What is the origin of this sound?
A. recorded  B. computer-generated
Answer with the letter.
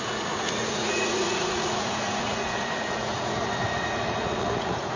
B